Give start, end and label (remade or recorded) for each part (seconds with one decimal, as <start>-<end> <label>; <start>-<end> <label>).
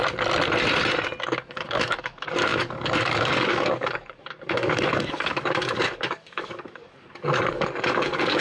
0.0-1.2 recorded; 1.2-8.4 remade